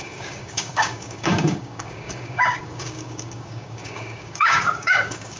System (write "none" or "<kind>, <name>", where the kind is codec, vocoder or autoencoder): codec, DAC